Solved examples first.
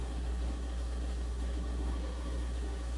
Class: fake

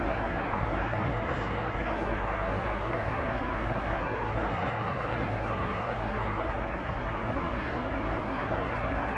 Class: fake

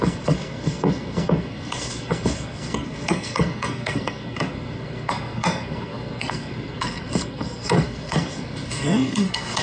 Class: fake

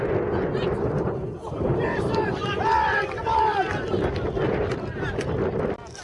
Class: real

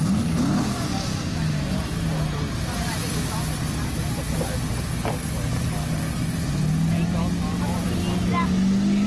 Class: real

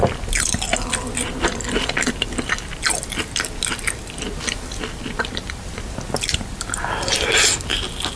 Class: real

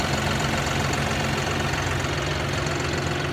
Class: real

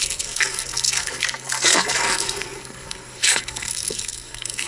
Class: fake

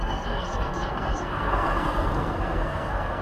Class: fake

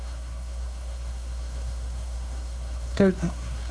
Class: fake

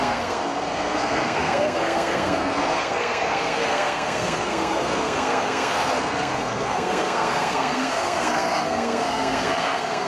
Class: fake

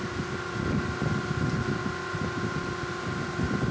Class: real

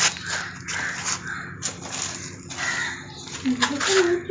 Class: real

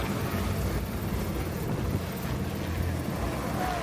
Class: real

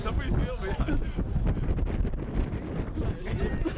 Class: real